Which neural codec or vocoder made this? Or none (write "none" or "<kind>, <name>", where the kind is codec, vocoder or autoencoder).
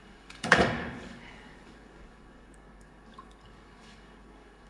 codec, DAC